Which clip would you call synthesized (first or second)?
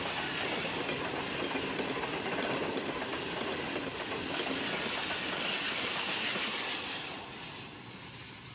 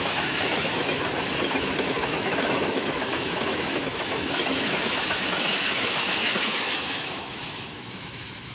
second